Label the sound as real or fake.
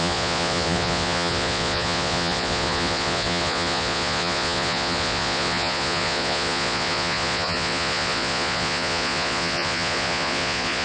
fake